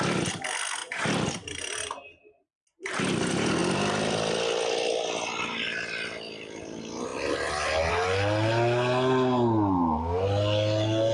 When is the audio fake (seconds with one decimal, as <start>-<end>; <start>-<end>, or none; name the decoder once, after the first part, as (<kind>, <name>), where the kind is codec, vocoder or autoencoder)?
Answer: 3.6-4.3 (vocoder, BigVGAN v2)